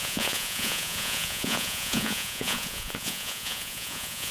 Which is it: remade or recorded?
remade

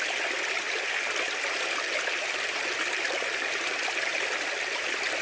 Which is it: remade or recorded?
recorded